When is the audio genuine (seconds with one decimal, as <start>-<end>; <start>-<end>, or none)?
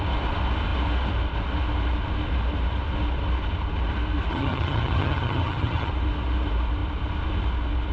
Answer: 0.0-4.3; 5.9-7.9